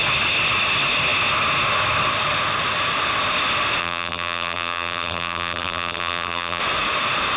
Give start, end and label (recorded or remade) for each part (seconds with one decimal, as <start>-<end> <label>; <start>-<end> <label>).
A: 0.0-3.8 recorded; 3.8-6.6 remade; 6.6-7.4 recorded